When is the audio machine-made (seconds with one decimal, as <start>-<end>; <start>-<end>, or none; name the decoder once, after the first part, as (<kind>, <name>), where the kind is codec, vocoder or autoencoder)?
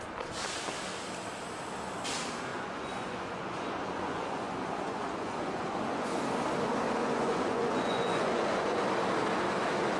2.5-6.2 (vocoder, Vocos); 7.0-8.8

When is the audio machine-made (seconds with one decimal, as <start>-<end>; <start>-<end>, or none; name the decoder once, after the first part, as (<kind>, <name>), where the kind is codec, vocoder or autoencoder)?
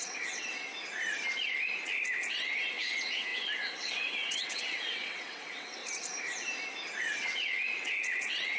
0.0-0.7 (vocoder, WaveNeXt); 2.3-5.8; 7.0-8.6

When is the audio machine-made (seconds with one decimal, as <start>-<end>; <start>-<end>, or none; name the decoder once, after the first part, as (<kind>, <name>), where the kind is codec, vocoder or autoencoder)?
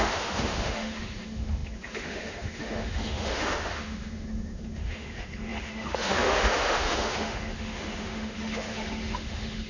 0.0-9.7 (autoencoder, DAC-VAE)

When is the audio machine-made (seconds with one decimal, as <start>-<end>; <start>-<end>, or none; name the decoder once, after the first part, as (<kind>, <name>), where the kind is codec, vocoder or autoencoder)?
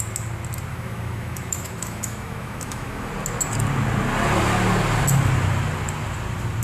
0.7-3.1 (autoencoder, DAC-VAE)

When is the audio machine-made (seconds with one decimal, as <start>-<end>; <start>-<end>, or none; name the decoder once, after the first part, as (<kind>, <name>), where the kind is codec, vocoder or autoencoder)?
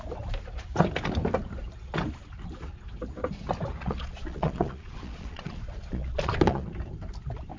3.8-6.7 (vocoder, Vocos)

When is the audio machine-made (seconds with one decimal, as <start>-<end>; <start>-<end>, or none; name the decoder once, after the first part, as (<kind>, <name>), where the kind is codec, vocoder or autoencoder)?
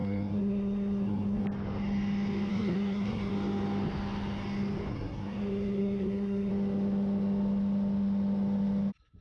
0.0-1.4 (codec, SNAC); 2.5-3.3; 4.9-6.5